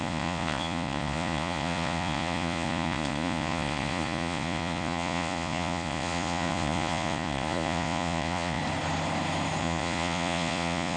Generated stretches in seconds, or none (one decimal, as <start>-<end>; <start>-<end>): 0.0-8.6; 9.6-11.0